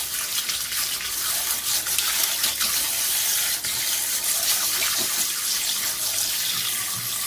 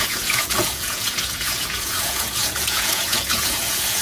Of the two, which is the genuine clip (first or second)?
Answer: first